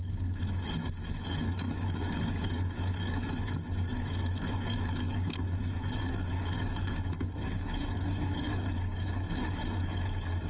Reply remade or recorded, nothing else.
remade